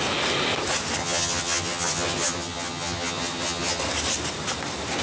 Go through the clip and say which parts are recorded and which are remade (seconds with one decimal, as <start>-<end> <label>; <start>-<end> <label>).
0.0-1.0 recorded; 1.0-3.8 remade; 3.8-5.0 recorded